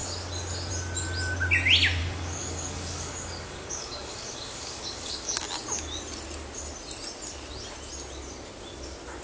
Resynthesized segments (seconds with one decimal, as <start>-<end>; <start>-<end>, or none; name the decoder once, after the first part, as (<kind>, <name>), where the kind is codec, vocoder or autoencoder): 2.0-5.4 (codec, DAC)